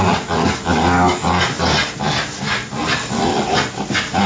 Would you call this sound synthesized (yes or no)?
no